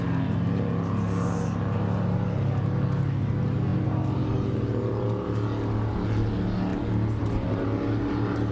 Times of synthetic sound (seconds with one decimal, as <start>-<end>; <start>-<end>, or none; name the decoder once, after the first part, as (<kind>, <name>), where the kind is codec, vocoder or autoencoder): none